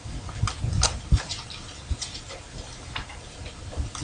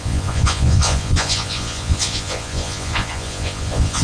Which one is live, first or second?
first